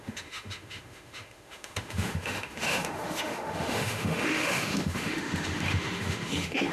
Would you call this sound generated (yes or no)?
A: yes